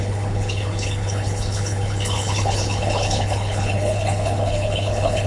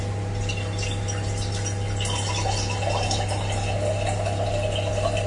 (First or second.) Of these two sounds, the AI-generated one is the first